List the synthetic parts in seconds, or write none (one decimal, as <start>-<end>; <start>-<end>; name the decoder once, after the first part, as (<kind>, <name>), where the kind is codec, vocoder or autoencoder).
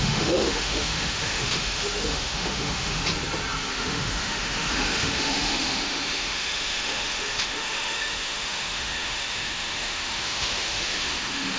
0.0-3.0 (autoencoder, DAC-VAE); 3.7-11.6